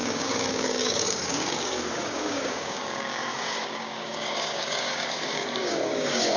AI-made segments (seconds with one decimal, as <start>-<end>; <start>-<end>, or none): 0.0-6.4